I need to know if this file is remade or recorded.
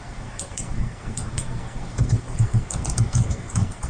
remade